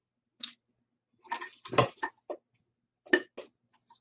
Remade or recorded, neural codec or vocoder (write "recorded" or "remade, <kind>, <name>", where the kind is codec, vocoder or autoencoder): recorded